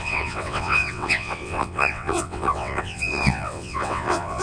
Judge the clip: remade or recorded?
remade